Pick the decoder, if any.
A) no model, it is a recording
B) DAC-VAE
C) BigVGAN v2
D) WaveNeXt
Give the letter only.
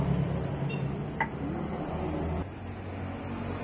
A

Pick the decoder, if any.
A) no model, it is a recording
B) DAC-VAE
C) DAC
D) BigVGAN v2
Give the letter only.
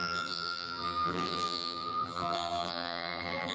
D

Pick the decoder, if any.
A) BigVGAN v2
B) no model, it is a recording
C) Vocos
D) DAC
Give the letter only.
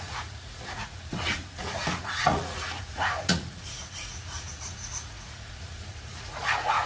C